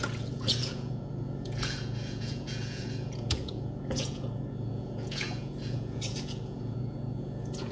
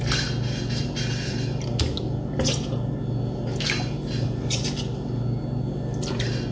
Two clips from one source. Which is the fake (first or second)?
first